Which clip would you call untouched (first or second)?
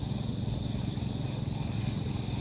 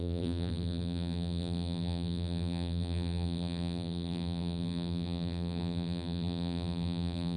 first